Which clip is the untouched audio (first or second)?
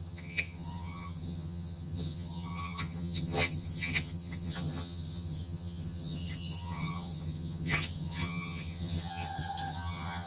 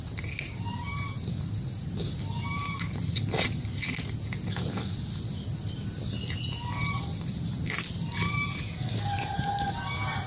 second